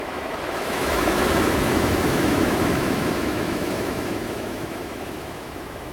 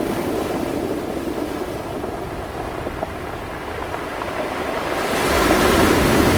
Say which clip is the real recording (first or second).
second